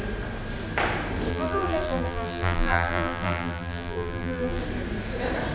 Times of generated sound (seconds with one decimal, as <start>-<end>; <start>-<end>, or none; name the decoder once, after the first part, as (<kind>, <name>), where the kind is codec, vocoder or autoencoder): 1.3-4.6 (vocoder, BigVGAN v2)